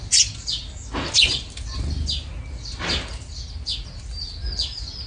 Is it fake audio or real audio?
real